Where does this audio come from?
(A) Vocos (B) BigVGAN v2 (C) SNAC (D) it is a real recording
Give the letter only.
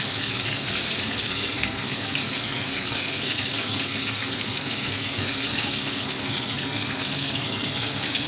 C